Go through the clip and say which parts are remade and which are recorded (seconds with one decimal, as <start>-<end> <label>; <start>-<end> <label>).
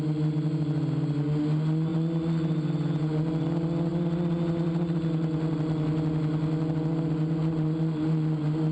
0.0-8.7 recorded